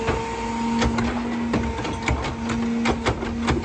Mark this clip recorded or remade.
recorded